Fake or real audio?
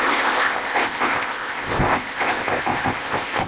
fake